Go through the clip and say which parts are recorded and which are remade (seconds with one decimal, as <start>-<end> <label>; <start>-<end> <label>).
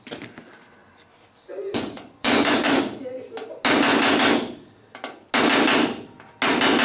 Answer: 0.0-1.5 recorded; 1.5-2.8 remade; 2.8-6.8 recorded